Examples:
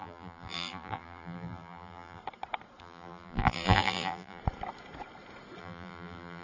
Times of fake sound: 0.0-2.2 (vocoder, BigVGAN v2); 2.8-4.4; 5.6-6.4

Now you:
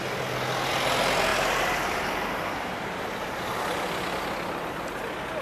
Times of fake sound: 1.3-3.6 (vocoder, BigVGAN v2)